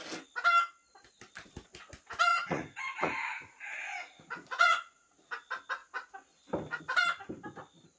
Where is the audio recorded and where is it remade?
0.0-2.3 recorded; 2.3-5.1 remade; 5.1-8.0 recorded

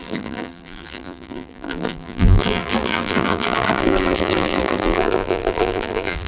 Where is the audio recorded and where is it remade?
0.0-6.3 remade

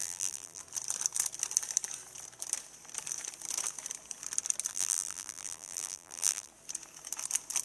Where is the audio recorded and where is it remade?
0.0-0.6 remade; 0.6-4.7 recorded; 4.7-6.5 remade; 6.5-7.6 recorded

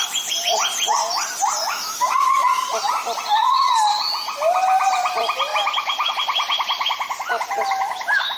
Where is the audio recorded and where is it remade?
0.0-1.6 recorded; 1.6-2.9 remade; 2.9-5.5 recorded; 5.5-6.1 remade; 6.1-8.4 recorded

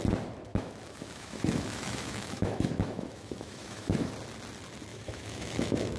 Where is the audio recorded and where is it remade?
0.0-0.5 recorded; 0.5-4.1 remade; 4.1-4.9 recorded; 4.9-6.0 remade

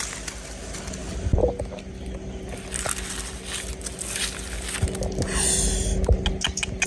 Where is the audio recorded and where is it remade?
0.0-6.9 recorded